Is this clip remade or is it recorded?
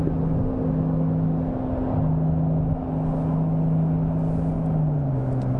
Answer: recorded